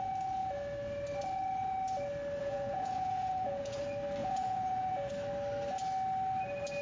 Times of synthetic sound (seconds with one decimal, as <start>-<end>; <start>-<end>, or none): 2.4-3.8; 4.2-5.1